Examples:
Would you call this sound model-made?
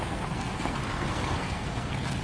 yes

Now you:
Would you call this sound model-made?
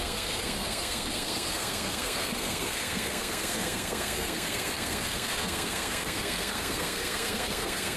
yes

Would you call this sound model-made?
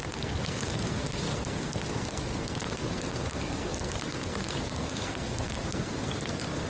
yes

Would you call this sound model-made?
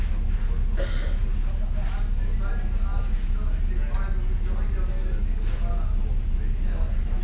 no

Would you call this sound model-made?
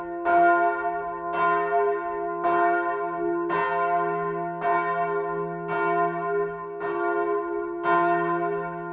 no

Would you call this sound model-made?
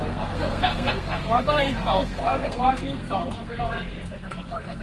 yes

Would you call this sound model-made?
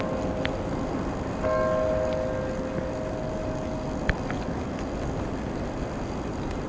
no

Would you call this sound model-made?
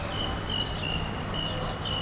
no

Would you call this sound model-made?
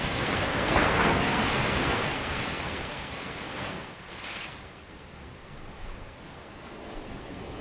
yes